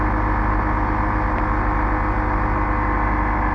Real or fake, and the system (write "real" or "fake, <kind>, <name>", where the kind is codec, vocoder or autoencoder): real